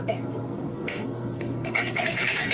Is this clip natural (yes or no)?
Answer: no